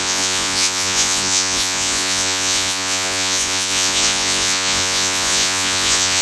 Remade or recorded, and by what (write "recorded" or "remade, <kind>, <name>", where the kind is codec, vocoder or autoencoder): remade, vocoder, Vocos